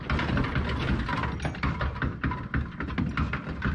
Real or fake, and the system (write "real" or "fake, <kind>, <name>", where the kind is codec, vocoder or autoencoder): real